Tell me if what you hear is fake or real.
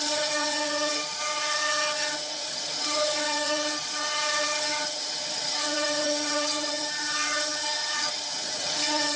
fake